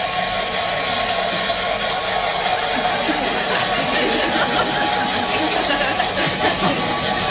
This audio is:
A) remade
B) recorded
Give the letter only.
B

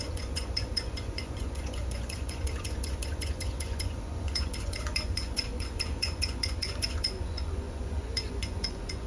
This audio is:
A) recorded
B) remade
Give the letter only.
B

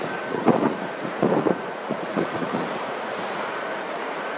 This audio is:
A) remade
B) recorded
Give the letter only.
A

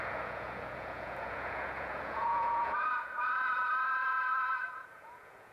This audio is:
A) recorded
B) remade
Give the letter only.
B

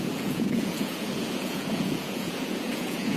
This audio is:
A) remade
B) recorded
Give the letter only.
A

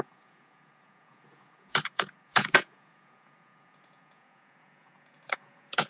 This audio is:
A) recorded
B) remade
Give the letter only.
B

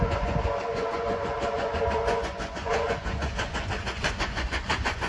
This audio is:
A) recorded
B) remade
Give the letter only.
B